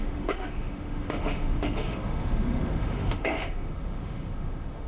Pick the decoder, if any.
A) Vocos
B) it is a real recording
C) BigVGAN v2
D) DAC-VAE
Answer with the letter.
D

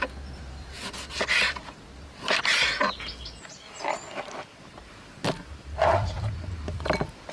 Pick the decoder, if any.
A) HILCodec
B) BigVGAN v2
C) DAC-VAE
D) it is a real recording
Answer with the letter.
D